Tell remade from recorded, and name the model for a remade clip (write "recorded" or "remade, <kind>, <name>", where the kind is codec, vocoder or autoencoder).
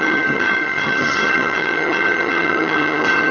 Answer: remade, vocoder, HiFi-GAN